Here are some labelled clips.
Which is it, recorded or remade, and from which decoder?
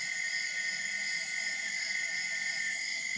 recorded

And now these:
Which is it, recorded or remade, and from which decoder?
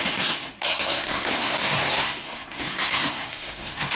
remade, codec, SNAC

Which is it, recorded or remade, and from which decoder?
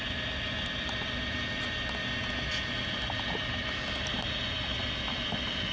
recorded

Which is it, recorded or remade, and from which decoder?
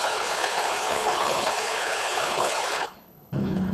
remade, codec, HILCodec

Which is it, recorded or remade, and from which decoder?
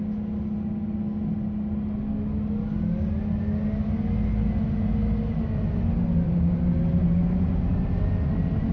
recorded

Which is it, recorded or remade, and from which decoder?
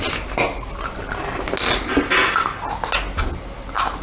recorded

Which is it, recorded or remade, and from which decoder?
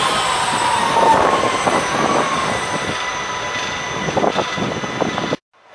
recorded